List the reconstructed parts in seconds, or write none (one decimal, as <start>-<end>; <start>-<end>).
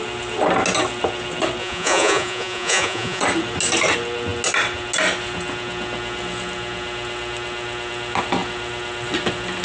1.6-3.2